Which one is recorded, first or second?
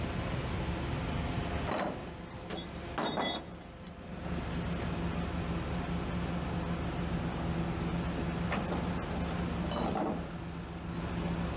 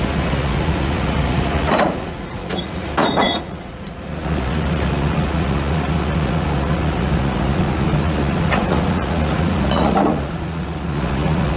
first